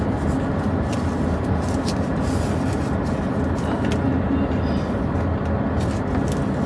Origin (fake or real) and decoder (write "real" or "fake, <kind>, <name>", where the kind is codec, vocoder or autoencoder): real